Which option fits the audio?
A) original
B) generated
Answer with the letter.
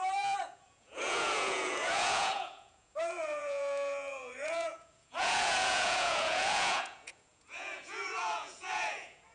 B